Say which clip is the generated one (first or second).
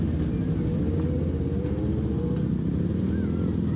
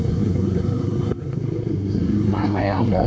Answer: second